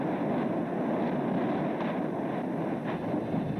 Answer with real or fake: real